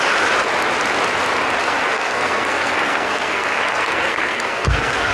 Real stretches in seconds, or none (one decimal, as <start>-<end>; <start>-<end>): 0.0-1.6